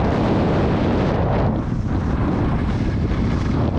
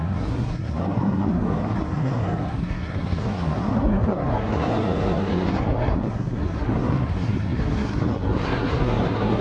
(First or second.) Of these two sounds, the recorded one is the first